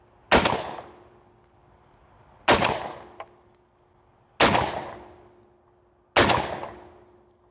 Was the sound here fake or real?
real